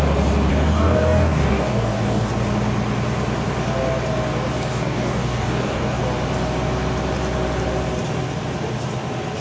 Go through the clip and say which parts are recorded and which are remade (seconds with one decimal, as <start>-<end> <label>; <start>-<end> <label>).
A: 0.0-0.5 recorded; 0.5-2.3 remade; 2.3-4.7 recorded; 4.7-6.0 remade; 6.0-9.4 recorded